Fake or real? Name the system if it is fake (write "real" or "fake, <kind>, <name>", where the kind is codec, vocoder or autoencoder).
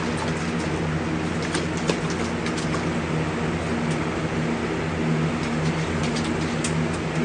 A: real